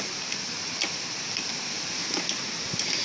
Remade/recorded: recorded